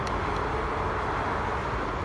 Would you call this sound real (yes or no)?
yes